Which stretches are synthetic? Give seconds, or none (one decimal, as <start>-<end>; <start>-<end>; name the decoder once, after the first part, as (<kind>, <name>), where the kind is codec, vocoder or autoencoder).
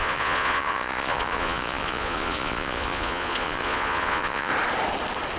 0.0-4.5 (vocoder, Vocos)